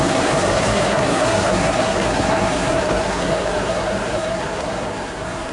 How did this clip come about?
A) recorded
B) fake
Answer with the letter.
B